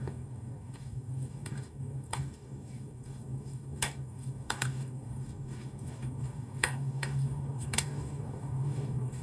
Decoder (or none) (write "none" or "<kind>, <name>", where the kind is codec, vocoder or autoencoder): codec, DAC